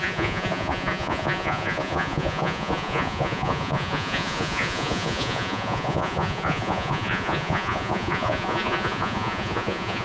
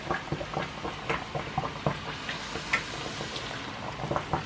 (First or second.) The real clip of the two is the second